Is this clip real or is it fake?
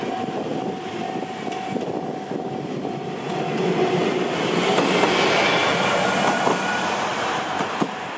real